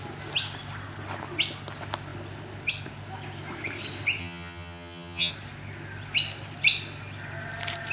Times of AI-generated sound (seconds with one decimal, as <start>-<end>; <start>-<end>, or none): 4.2-5.3